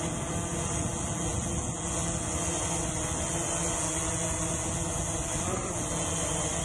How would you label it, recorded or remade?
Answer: recorded